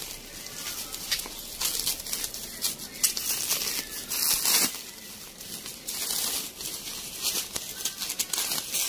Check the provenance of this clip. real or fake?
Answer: real